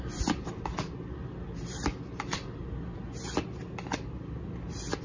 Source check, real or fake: real